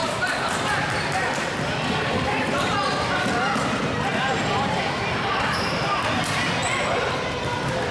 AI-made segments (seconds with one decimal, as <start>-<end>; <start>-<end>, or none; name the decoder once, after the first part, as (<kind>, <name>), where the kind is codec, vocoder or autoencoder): 0.0-2.7 (vocoder, BigVGAN v2); 4.1-5.0